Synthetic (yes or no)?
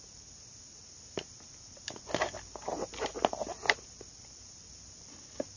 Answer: no